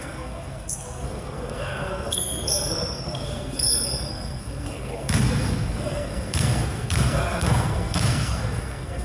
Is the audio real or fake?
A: fake